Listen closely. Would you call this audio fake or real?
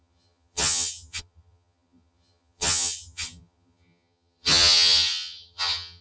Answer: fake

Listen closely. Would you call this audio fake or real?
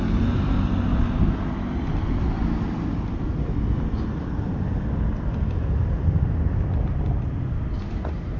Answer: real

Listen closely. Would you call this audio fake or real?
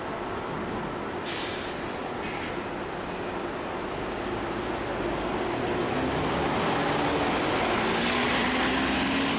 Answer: real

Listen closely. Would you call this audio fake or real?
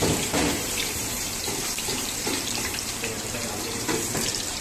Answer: fake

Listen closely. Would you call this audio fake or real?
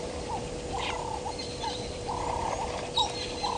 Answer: fake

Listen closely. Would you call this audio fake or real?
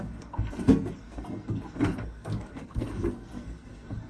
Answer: fake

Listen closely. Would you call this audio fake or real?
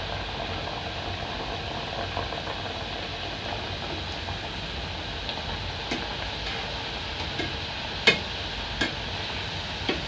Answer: real